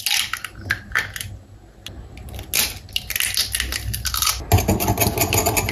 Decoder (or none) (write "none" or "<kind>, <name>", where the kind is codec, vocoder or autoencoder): none